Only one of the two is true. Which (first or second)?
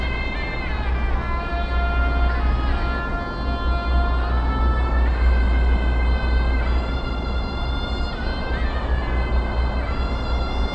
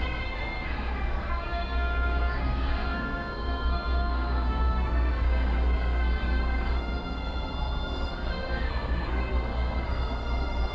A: first